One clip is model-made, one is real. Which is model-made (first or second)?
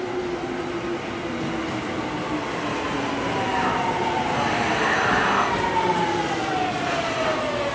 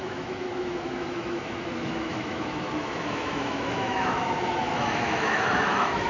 second